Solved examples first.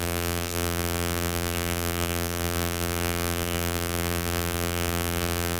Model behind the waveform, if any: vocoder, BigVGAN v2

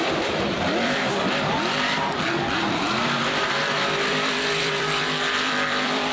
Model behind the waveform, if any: vocoder, BigVGAN v2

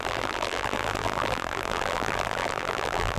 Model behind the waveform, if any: vocoder, BigVGAN v2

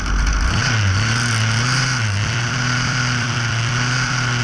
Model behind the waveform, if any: vocoder, BigVGAN v2